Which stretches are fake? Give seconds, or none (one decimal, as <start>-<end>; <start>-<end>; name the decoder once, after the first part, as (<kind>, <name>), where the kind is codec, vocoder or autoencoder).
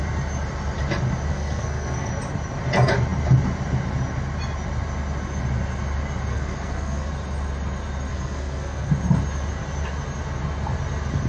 1.3-2.1 (codec, SNAC); 6.3-7.1; 8.1-8.9